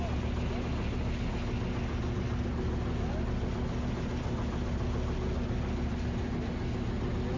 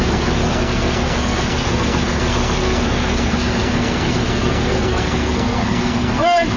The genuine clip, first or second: first